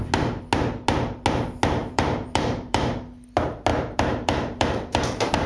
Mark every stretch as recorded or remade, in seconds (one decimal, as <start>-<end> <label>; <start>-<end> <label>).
0.0-1.8 recorded; 1.8-2.9 remade; 2.9-3.7 recorded; 3.7-5.5 remade